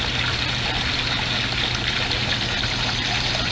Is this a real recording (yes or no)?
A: yes